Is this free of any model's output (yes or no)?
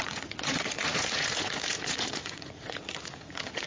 no